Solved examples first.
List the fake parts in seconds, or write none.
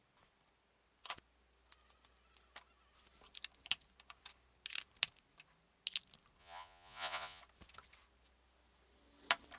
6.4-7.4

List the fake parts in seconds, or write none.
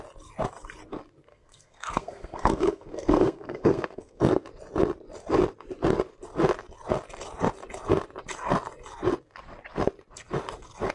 1.3-4.3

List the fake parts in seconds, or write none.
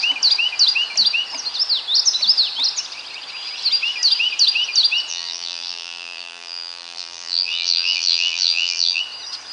5.1-9.0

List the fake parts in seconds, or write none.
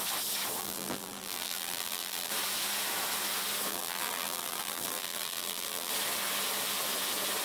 0.6-2.3; 3.7-5.9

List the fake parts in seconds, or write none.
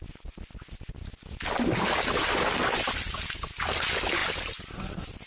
none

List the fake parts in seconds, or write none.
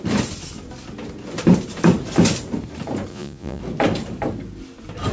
3.1-3.6